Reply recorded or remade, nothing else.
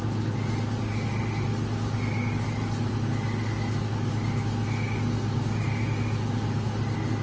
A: recorded